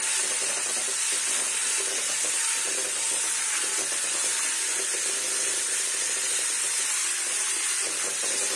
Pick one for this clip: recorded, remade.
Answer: recorded